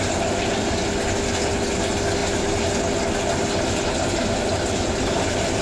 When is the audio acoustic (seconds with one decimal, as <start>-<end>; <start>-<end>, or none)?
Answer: 0.0-5.6